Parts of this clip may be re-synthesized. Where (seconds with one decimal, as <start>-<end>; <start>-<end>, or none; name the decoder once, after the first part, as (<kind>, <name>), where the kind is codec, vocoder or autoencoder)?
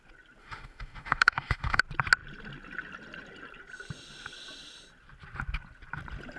0.4-1.8 (autoencoder, DAC-VAE)